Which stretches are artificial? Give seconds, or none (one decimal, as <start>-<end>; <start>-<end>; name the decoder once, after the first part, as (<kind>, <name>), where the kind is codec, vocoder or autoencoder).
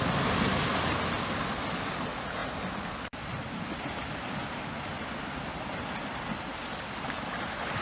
none